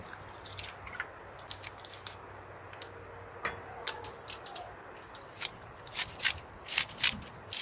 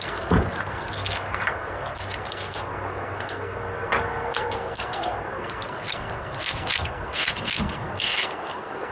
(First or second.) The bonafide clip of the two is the first